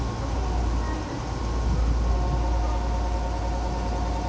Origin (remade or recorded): recorded